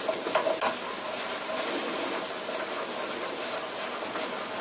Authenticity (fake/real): real